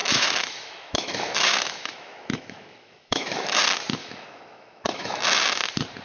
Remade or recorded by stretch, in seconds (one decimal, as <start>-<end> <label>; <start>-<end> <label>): 0.0-3.6 remade; 3.6-4.0 recorded; 4.0-5.2 remade; 5.2-6.0 recorded